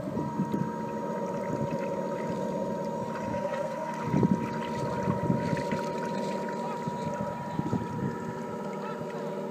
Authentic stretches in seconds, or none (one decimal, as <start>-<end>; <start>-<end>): 0.0-3.3; 3.9-9.5